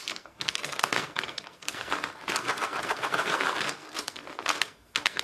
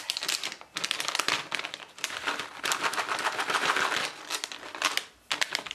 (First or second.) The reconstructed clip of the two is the first